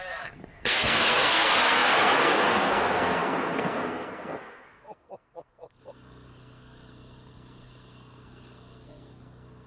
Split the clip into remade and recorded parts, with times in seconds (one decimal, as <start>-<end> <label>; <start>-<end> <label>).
0.0-9.7 remade